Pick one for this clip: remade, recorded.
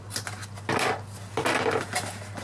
recorded